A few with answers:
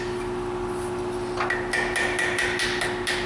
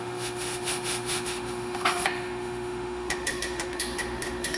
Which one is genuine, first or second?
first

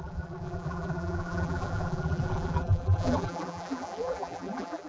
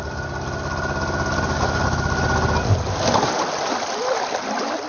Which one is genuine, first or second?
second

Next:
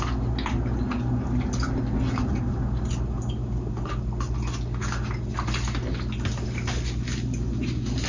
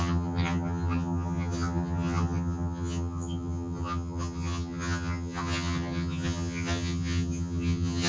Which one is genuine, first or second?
first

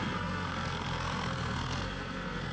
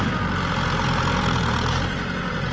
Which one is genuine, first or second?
second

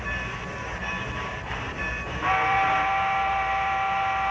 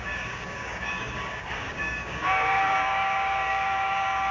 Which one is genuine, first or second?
first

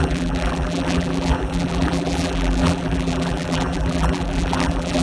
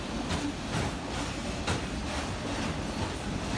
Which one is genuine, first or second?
second